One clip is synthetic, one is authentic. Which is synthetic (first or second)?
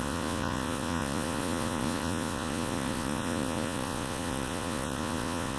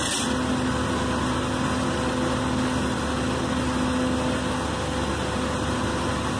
first